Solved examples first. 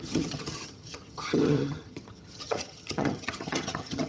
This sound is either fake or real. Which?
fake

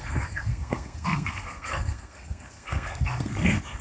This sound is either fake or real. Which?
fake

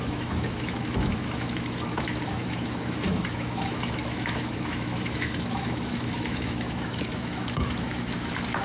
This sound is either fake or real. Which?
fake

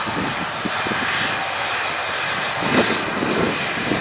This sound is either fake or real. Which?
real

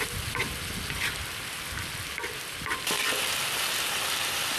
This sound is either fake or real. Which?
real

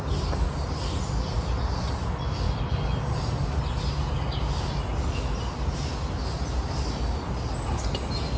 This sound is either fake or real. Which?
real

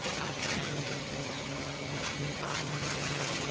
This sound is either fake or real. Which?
fake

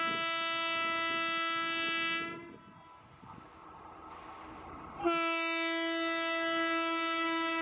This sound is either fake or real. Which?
real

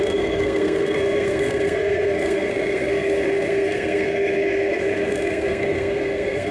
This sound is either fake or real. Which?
fake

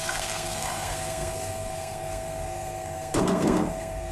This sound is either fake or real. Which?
fake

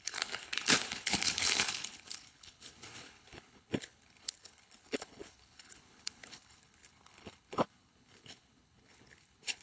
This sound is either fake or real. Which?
fake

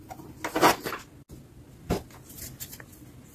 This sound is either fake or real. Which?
real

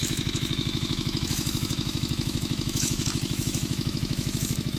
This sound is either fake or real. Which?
fake